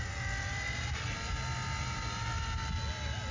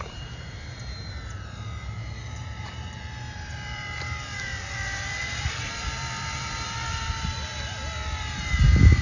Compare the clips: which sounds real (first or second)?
first